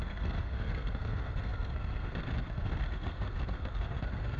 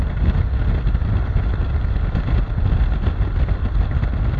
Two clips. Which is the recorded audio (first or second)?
second